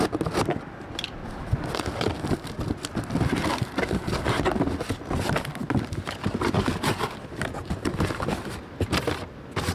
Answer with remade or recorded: recorded